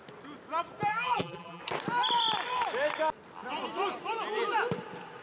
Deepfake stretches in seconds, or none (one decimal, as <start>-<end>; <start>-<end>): 0.9-1.6